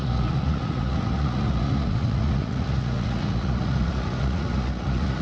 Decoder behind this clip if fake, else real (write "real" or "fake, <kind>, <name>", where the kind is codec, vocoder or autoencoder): fake, vocoder, Vocos